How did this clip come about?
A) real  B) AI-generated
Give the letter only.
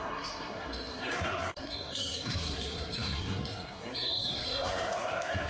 B